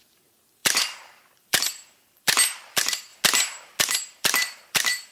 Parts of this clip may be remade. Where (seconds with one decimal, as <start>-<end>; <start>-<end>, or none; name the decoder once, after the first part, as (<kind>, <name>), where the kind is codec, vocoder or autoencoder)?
0.0-3.1 (vocoder, BigVGAN v2); 3.8-5.1